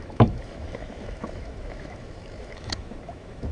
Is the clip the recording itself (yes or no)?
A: no